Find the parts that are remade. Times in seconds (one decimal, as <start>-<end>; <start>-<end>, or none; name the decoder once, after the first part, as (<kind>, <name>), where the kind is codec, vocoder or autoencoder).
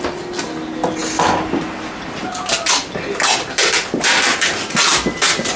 none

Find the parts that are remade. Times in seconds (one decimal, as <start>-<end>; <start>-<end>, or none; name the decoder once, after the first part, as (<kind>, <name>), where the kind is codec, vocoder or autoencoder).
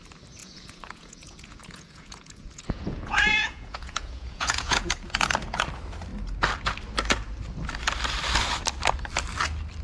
0.4-4.9 (vocoder, Vocos)